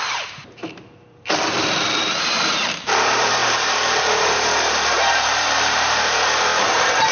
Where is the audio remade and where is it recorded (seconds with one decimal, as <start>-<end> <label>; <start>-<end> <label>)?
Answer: 0.0-7.1 remade